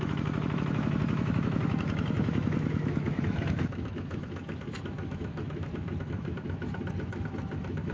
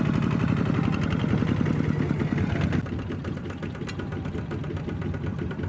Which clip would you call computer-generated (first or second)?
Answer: first